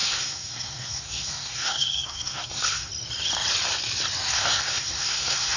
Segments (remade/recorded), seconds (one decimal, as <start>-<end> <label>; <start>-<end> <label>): 0.0-2.9 remade; 2.9-4.3 recorded; 4.3-5.6 remade